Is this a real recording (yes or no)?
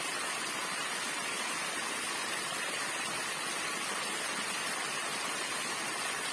yes